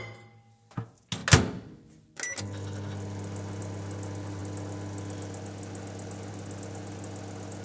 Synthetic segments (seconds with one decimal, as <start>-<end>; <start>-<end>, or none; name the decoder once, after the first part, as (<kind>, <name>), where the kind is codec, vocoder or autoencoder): none

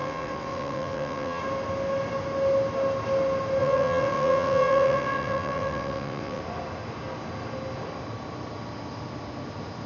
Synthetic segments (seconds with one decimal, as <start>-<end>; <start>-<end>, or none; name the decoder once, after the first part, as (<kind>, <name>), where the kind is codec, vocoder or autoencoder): 0.0-1.4 (vocoder, WaveNeXt); 3.6-6.4

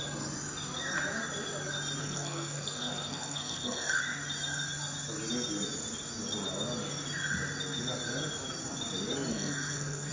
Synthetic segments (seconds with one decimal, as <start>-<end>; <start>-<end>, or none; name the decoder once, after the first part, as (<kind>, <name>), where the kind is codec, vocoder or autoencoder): 2.0-4.0 (codec, SNAC); 9.3-10.1

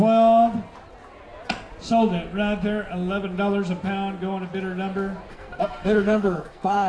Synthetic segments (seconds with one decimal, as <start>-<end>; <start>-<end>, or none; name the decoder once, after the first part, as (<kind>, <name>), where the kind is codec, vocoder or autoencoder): 5.3-6.9 (codec, SNAC)